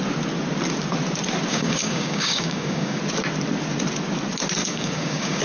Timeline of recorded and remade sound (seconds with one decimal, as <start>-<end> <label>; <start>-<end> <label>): 0.0-1.5 recorded; 1.5-3.0 remade; 3.0-4.6 recorded; 4.6-5.4 remade